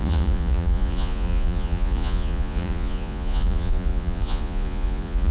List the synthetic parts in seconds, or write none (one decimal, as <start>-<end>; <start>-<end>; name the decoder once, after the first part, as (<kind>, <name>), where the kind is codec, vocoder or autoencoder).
0.0-5.3 (vocoder, Vocos)